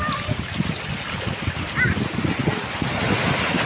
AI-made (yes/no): no